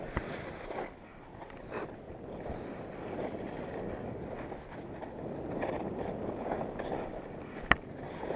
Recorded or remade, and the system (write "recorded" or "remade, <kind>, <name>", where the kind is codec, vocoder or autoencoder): recorded